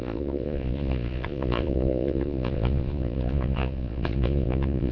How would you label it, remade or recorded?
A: remade